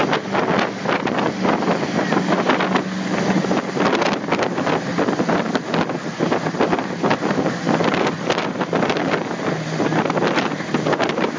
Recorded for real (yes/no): yes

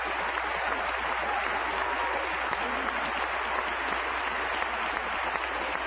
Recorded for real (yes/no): yes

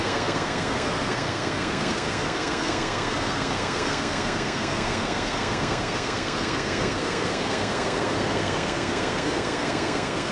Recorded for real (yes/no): no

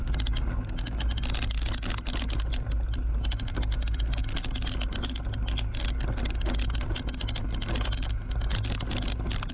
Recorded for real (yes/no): yes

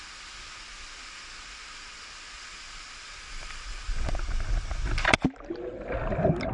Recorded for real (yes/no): yes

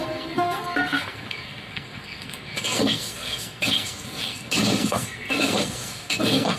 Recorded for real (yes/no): no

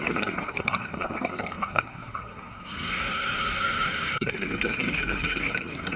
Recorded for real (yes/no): no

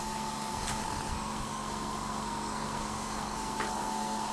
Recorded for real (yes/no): no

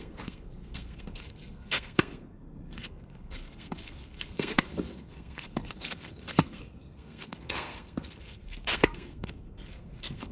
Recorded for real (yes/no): no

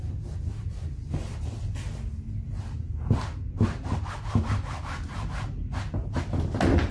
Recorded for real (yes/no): yes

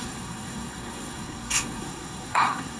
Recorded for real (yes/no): no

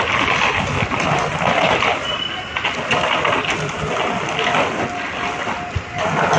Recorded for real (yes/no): yes